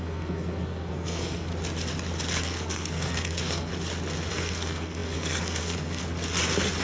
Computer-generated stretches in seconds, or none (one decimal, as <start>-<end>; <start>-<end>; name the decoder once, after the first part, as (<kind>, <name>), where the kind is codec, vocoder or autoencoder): 0.0-1.5 (codec, SNAC); 2.4-3.7; 4.3-6.0